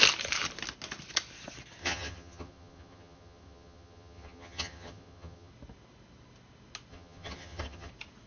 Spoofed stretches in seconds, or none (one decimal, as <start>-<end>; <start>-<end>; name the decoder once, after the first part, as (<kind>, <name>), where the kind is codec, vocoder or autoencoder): 1.8-5.5 (vocoder, HiFi-GAN); 6.9-7.9